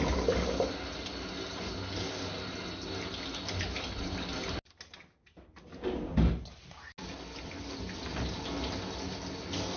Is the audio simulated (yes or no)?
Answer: no